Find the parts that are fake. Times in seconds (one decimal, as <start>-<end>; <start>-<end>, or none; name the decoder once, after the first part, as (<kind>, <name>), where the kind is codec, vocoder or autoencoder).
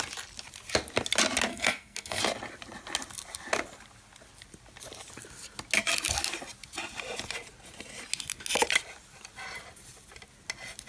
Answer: 1.5-2.2 (codec, SNAC)